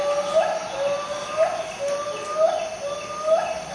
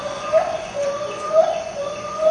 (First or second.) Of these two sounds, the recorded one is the first